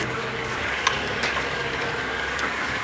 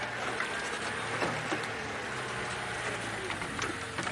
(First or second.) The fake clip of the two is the first